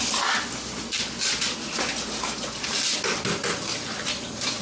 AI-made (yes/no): no